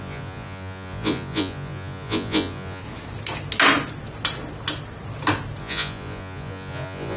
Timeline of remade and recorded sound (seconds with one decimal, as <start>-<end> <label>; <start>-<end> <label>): 0.0-2.8 remade; 2.8-5.6 recorded; 5.6-7.2 remade